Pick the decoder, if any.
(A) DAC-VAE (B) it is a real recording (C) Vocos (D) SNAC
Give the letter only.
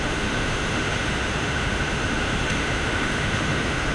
A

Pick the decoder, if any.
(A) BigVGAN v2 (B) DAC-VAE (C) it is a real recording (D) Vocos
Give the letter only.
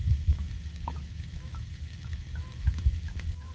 B